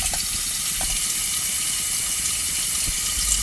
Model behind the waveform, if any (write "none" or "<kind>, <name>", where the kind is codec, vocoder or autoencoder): none